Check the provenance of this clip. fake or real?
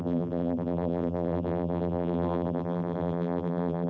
fake